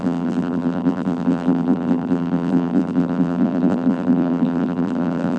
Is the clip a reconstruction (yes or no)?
yes